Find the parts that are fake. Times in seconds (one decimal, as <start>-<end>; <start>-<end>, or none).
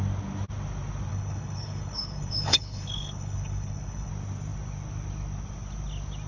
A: 1.1-4.1